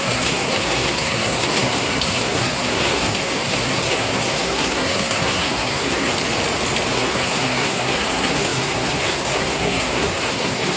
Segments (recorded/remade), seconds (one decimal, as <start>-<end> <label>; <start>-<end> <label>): 0.0-6.1 remade; 6.1-6.9 recorded; 6.9-10.8 remade